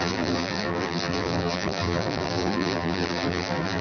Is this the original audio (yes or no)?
no